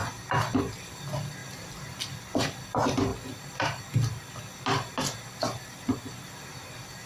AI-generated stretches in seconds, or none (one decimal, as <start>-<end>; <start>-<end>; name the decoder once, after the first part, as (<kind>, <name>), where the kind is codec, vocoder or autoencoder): 0.0-3.1 (vocoder, BigVGAN v2); 5.0-7.1